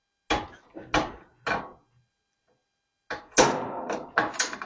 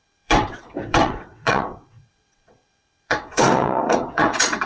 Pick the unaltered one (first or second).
first